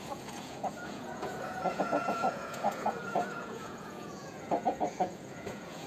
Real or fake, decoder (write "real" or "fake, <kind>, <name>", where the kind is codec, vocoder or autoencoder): fake, vocoder, Vocos